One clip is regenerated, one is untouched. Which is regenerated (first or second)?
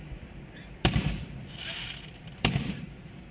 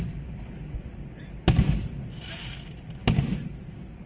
first